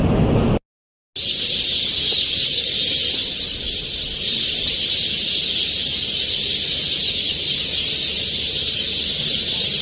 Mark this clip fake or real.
real